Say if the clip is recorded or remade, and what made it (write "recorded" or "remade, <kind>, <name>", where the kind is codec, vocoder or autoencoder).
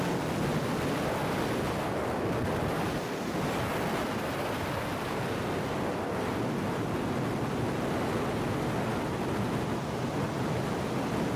recorded